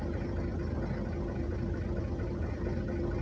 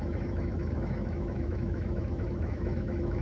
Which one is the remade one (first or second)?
second